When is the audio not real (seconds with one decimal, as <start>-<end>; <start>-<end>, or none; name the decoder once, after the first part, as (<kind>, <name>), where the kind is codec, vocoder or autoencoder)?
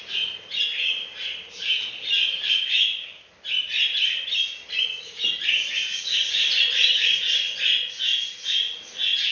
none